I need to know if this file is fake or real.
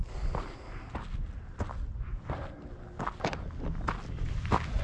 real